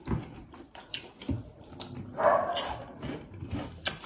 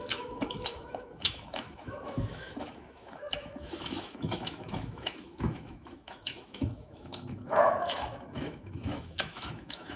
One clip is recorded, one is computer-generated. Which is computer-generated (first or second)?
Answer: second